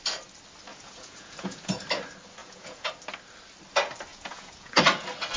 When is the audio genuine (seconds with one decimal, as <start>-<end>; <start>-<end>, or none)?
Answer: 0.0-0.7; 1.7-2.4; 2.9-4.1; 4.8-5.4